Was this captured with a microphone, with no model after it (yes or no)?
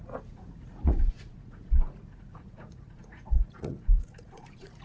no